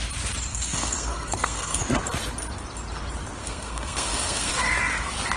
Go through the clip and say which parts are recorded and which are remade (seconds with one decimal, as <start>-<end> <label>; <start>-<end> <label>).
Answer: 0.0-0.5 recorded; 0.5-1.8 remade; 1.8-3.4 recorded; 3.4-4.7 remade; 4.7-5.4 recorded